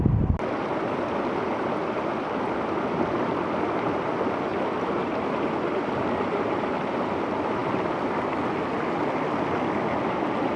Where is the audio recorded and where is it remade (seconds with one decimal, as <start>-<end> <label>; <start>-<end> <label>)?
0.0-4.5 recorded; 4.5-5.2 remade; 5.2-10.6 recorded